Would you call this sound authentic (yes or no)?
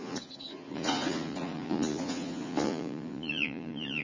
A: no